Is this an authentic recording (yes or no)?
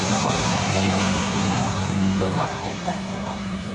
no